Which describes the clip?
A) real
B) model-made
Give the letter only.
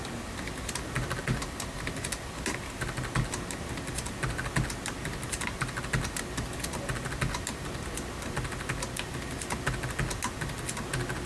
A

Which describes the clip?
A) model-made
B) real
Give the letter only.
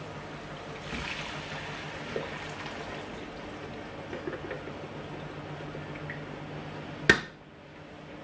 B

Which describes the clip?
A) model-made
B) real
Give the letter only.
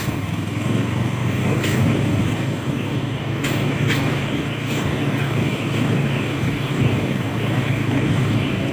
A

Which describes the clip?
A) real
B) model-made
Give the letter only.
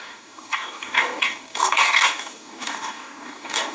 B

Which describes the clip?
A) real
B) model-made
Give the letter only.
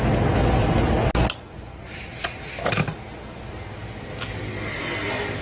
A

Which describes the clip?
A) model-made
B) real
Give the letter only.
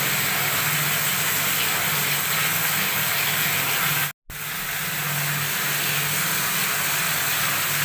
B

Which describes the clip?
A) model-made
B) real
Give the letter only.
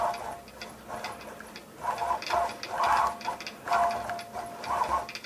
B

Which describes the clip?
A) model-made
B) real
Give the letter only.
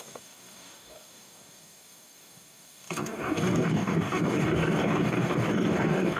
A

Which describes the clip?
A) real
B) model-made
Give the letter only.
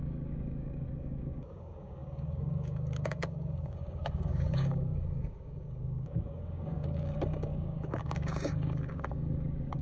B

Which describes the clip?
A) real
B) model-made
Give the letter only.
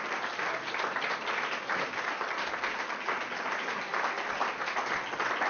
A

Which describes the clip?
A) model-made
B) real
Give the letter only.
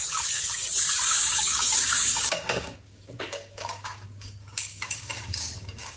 A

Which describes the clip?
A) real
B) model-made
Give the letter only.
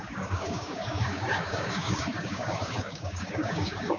B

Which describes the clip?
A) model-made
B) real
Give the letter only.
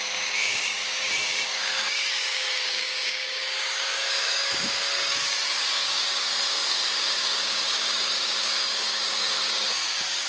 A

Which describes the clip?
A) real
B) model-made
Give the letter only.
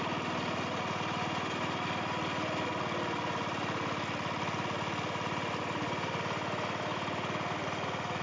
A